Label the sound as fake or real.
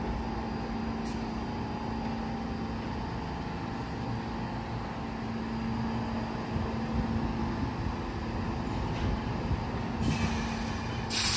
real